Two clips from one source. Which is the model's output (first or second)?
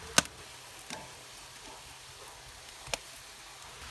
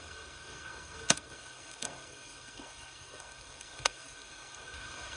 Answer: second